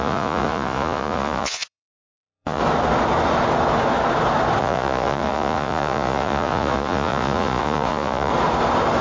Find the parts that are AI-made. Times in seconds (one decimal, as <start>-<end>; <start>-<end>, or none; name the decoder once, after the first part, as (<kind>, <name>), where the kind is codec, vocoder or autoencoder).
0.0-2.6 (vocoder, Vocos); 4.6-8.3